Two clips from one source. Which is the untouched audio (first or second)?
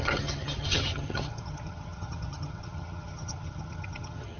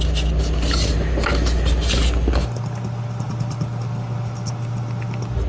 second